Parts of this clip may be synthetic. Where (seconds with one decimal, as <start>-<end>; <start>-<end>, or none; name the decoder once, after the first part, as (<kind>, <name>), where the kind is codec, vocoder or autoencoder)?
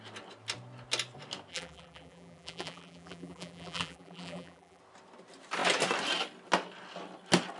1.5-4.8 (vocoder, BigVGAN v2)